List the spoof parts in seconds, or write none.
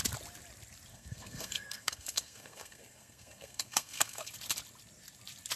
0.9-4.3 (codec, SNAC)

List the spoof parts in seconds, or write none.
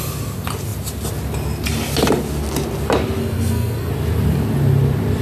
3.2-3.9 (codec, SNAC)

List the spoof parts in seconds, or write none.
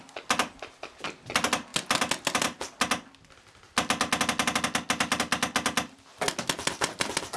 none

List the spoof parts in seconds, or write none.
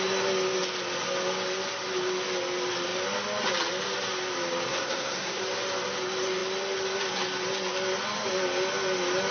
4.7-5.4 (codec, SNAC)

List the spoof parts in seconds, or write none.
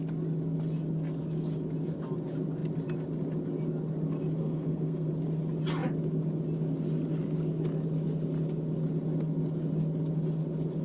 4.4-5.1 (codec, SNAC)